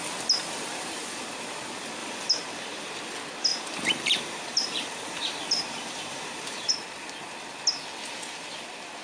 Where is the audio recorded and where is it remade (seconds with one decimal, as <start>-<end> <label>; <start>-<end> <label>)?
0.0-2.0 recorded; 2.0-2.9 remade; 2.9-3.5 recorded; 3.5-6.7 remade; 6.7-9.0 recorded